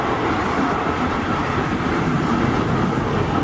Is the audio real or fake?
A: real